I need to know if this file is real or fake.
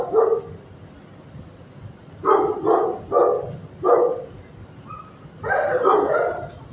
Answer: real